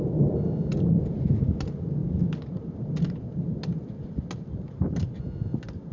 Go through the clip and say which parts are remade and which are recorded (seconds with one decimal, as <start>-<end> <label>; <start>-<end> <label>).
0.0-5.9 recorded